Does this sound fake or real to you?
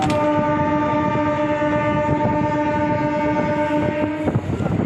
real